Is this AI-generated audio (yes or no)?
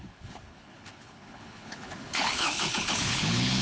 yes